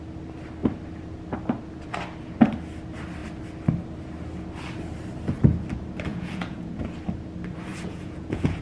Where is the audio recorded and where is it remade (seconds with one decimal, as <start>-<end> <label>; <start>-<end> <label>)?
0.0-6.1 recorded; 6.1-6.8 remade; 6.8-7.7 recorded; 7.7-8.6 remade